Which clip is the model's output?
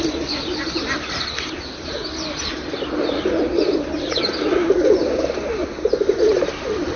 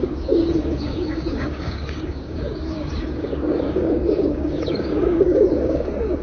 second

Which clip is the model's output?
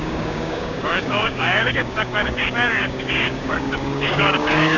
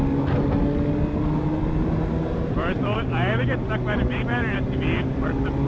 first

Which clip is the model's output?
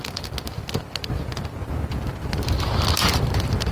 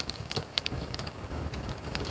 second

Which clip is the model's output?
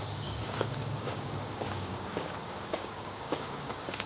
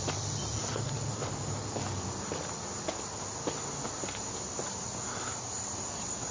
first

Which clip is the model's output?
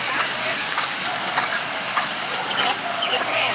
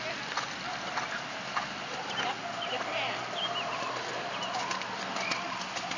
first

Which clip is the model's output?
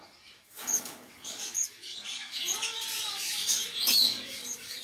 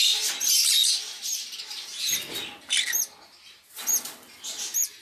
first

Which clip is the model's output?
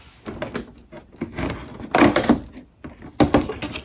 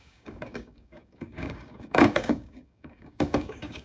second